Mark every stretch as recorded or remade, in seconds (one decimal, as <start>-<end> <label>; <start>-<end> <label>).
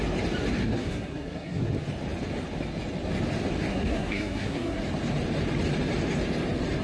0.0-0.6 recorded; 0.6-1.7 remade; 1.7-3.7 recorded; 3.7-4.8 remade; 4.8-6.8 recorded